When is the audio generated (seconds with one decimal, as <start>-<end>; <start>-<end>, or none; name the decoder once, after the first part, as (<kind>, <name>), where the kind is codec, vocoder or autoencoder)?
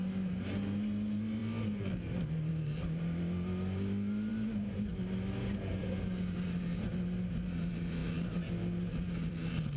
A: none